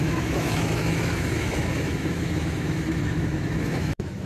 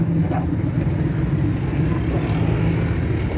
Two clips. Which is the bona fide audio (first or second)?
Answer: second